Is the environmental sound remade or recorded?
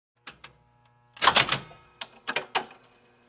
recorded